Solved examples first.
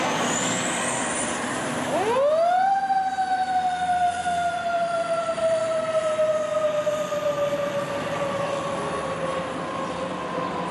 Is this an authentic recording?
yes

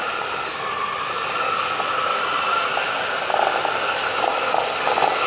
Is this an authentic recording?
yes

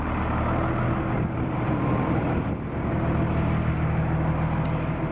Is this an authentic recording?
yes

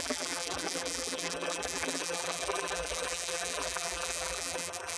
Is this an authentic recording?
no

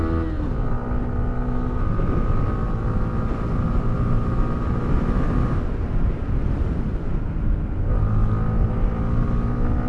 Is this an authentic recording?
yes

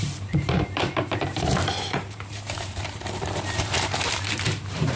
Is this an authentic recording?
no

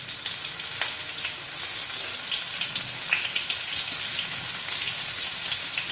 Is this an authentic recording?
yes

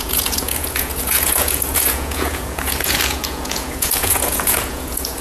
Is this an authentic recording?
no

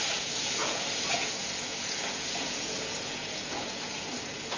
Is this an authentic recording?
no